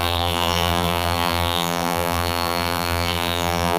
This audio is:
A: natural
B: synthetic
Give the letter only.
B